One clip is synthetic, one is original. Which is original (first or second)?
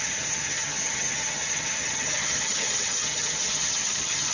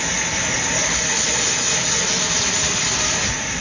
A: second